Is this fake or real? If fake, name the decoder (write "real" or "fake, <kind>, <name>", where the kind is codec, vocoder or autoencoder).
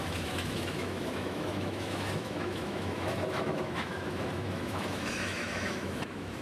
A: fake, autoencoder, DAC-VAE